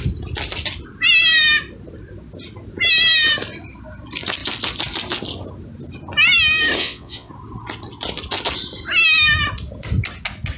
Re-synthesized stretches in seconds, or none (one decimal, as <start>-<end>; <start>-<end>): 6.8-7.3